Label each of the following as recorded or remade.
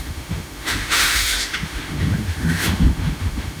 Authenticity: remade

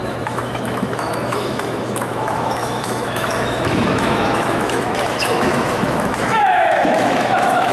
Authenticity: remade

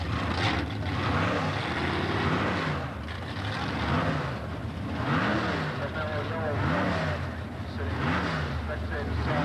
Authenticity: recorded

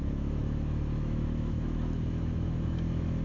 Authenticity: remade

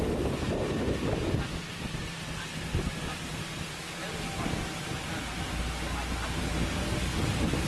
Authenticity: recorded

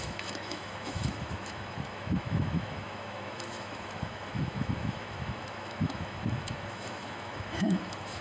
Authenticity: remade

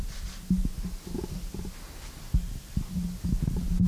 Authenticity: recorded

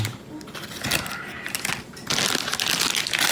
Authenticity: recorded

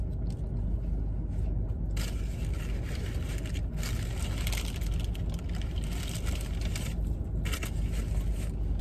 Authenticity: recorded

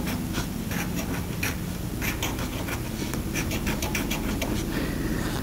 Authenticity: recorded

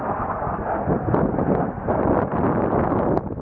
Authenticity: recorded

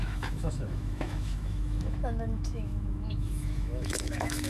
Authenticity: remade